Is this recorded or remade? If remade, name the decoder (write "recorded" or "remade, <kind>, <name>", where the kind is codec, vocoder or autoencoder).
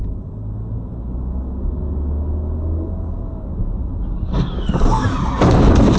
recorded